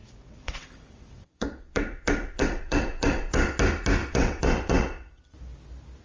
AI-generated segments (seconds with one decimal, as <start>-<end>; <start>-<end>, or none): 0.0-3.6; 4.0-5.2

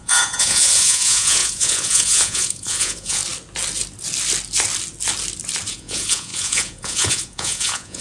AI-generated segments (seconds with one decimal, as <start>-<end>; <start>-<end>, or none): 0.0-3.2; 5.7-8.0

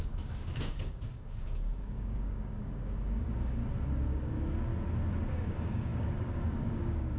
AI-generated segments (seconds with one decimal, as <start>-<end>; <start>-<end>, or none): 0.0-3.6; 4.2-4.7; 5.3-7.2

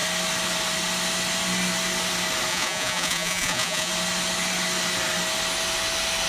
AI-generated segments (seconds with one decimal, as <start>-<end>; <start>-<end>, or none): 2.5-3.9

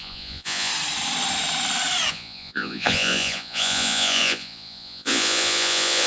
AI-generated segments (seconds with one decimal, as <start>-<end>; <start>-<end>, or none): 0.0-0.7; 2.1-6.1

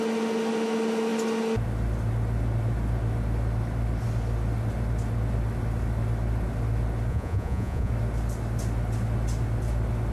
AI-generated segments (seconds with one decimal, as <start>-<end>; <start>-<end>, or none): 7.1-7.9

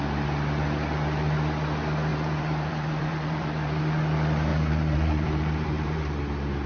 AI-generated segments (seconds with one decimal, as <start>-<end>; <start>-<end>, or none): 2.1-3.8; 4.5-6.2

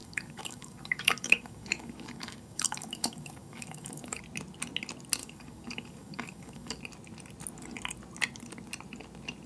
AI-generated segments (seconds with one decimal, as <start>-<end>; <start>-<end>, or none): 0.0-4.2; 5.2-6.8